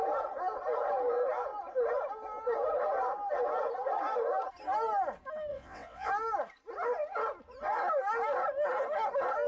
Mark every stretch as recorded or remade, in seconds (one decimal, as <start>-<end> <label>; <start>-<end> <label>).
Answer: 0.0-5.5 recorded; 5.5-6.1 remade; 6.1-9.5 recorded